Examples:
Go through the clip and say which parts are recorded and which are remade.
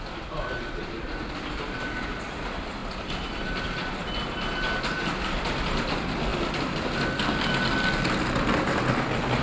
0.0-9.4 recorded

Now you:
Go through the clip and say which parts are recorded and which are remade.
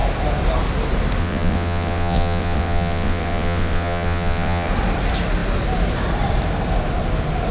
0.0-1.2 recorded; 1.2-4.7 remade; 4.7-7.5 recorded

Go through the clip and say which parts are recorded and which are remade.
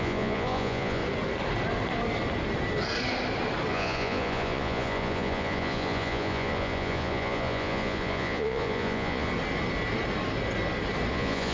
0.0-1.0 remade; 1.0-3.7 recorded; 3.7-9.3 remade; 9.3-11.1 recorded; 11.1-11.5 remade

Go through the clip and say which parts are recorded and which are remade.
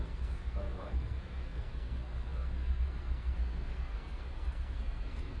0.0-5.4 remade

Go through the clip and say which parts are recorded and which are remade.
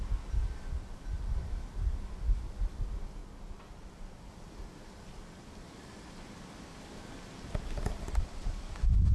0.0-3.2 recorded; 3.2-4.3 remade; 4.3-9.1 recorded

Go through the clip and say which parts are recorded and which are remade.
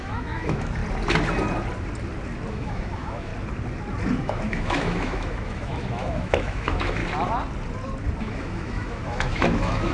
0.0-0.8 remade; 0.8-2.5 recorded; 2.5-3.3 remade; 3.3-4.2 recorded; 4.2-7.0 remade; 7.0-8.2 recorded; 8.2-9.9 remade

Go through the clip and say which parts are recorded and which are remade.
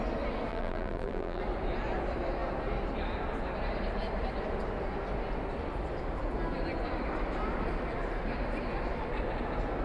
0.0-0.5 recorded; 0.5-1.4 remade; 1.4-9.8 recorded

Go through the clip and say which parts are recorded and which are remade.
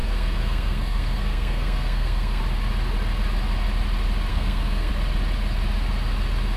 0.0-2.4 remade; 2.4-4.3 recorded; 4.3-4.9 remade; 4.9-6.6 recorded